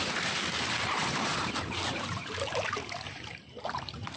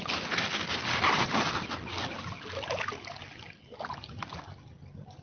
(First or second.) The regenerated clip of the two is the first